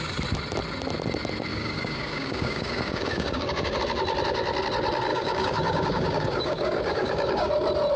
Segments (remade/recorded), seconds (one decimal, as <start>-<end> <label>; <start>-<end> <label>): 0.0-1.5 recorded; 1.5-3.8 remade; 3.8-5.1 recorded; 5.1-7.5 remade; 7.5-8.0 recorded